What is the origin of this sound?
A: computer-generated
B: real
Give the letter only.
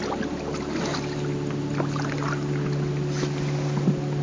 B